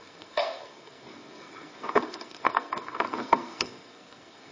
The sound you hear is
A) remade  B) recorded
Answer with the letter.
A